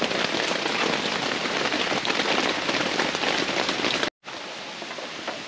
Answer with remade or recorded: recorded